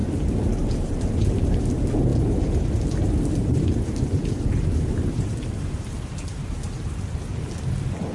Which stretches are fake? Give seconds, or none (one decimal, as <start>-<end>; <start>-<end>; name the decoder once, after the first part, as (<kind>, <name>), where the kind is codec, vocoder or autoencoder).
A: 0.0-1.7 (vocoder, BigVGAN v2); 2.1-7.0